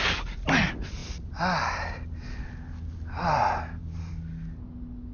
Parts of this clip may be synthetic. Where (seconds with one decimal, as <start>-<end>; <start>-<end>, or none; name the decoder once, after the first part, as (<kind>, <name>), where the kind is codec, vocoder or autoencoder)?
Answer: none